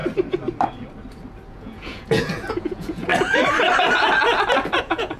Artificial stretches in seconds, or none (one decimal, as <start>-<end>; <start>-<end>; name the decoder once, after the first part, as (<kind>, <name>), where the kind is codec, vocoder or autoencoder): 1.5-3.1 (vocoder, Vocos); 4.8-5.2